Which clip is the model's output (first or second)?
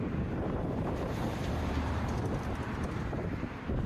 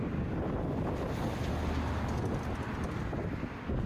first